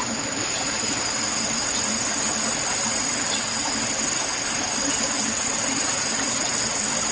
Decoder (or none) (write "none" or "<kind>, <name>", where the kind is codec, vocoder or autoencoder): none